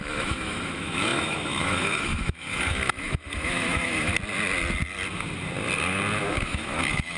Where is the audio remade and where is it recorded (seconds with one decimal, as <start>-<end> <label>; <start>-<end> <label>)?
0.0-4.1 remade; 4.1-6.3 recorded; 6.3-7.2 remade